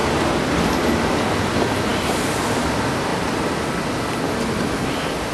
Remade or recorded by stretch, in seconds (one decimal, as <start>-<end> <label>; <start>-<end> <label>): 0.0-5.3 recorded